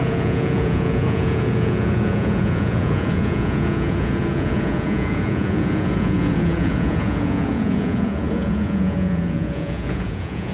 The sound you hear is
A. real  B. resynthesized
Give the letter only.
B